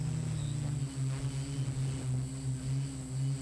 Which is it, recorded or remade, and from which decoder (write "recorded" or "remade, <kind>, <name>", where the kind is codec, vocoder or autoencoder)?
recorded